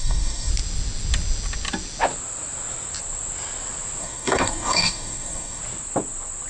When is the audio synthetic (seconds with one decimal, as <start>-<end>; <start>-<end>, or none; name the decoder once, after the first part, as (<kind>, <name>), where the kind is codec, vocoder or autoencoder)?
0.0-0.5 (codec, DAC); 4.0-5.6